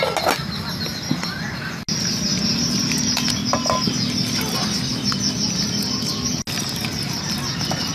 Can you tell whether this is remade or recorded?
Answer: recorded